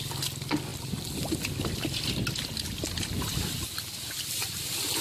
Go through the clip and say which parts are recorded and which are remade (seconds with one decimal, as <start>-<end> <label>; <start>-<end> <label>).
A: 0.0-5.0 recorded

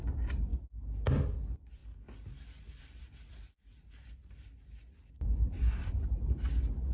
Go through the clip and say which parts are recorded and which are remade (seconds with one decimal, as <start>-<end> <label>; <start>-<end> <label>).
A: 0.0-1.8 recorded; 1.8-5.9 remade; 5.9-6.9 recorded

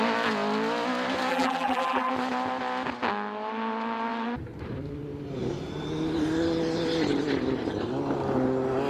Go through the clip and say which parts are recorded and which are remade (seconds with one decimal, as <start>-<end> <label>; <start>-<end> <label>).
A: 0.0-1.3 recorded; 1.3-2.1 remade; 2.1-8.9 recorded